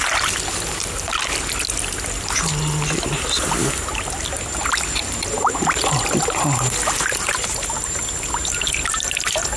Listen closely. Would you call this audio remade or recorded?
recorded